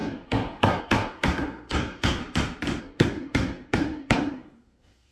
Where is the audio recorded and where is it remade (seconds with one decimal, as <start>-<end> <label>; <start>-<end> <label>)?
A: 0.0-2.2 remade; 2.2-2.8 recorded; 2.8-5.1 remade